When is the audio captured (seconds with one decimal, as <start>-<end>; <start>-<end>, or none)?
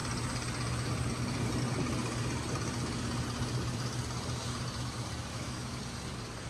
0.0-5.3; 5.8-6.5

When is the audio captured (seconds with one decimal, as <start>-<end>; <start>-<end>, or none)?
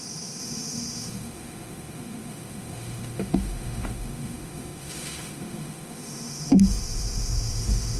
none